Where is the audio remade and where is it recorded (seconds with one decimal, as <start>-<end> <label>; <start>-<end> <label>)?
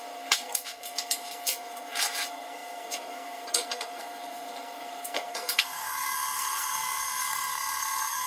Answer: 0.0-8.3 remade